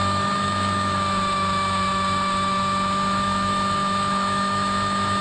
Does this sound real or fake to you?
fake